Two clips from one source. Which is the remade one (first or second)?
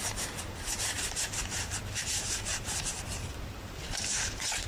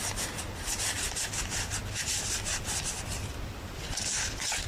first